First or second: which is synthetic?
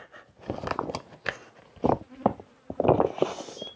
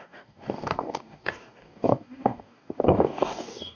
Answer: second